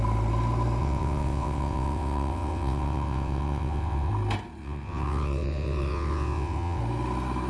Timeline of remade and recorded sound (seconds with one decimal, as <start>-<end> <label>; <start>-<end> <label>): 0.0-0.8 recorded; 0.8-4.1 remade; 4.1-4.6 recorded; 4.6-6.8 remade; 6.8-7.5 recorded